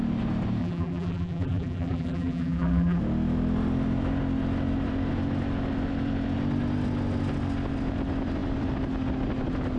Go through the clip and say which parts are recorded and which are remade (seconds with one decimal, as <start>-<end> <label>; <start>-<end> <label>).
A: 0.0-0.6 recorded; 0.6-3.0 remade; 3.0-9.8 recorded